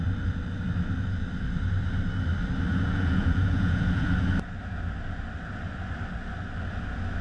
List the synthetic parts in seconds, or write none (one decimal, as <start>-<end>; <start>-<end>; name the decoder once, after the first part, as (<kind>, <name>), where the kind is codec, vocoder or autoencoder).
2.7-4.1 (vocoder, Vocos)